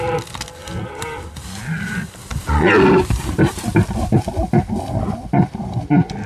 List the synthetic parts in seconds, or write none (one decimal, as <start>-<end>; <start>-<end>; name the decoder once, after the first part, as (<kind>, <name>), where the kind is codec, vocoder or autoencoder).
0.6-1.3 (vocoder, BigVGAN v2); 2.3-6.3